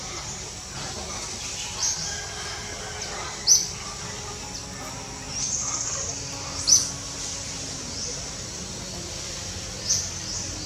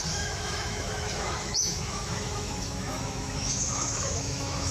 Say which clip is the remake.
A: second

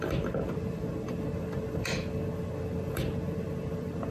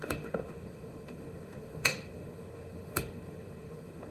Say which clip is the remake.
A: second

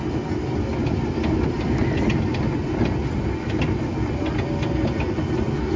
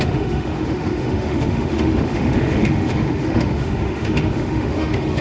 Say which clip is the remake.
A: second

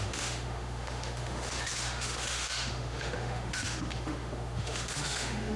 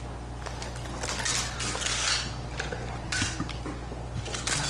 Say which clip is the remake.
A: first